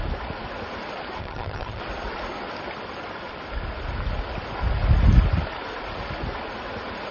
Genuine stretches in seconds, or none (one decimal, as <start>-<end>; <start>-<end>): 0.0-1.2; 1.8-7.1